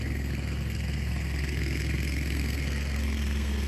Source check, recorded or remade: remade